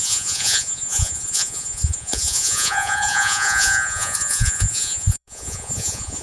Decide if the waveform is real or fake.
fake